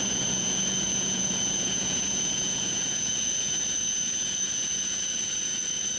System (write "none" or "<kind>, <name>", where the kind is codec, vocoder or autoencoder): vocoder, Vocos